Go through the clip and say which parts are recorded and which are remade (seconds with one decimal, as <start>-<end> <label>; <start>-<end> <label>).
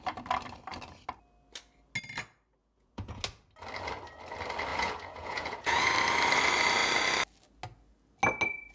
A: 0.0-2.6 recorded; 2.6-3.2 remade; 3.2-4.7 recorded; 4.7-5.9 remade; 5.9-8.7 recorded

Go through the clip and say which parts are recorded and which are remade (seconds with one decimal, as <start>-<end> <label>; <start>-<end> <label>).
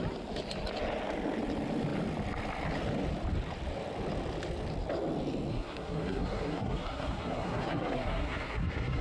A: 0.0-5.5 recorded; 5.5-9.0 remade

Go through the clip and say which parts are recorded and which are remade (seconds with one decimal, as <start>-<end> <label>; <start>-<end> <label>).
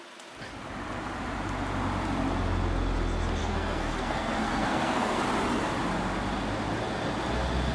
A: 0.0-3.4 recorded; 3.4-5.2 remade; 5.2-7.7 recorded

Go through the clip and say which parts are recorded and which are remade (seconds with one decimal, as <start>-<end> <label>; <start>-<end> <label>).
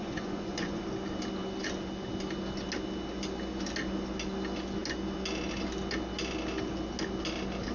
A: 0.0-0.8 remade; 0.8-7.7 recorded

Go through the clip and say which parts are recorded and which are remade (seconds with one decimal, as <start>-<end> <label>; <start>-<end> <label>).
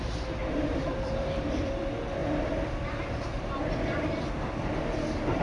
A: 0.0-0.4 recorded; 0.4-1.7 remade; 1.7-2.2 recorded; 2.2-4.3 remade; 4.3-5.4 recorded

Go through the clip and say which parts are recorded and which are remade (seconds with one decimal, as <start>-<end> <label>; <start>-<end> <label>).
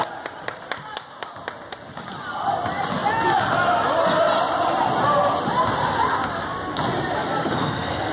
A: 0.0-7.4 recorded; 7.4-8.1 remade